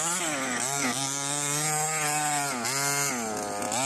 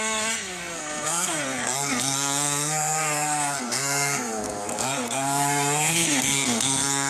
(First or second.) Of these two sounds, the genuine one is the first